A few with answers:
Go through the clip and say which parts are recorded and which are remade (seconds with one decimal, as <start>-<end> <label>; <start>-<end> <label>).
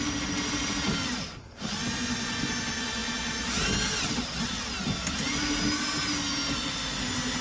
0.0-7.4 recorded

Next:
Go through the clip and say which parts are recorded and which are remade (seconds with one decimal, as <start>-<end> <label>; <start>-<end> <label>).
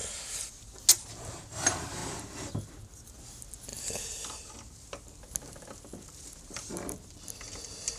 0.0-8.0 recorded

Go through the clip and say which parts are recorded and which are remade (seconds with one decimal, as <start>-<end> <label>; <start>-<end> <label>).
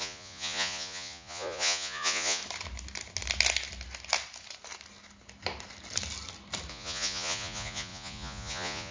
0.0-2.4 remade; 2.4-6.7 recorded; 6.7-8.9 remade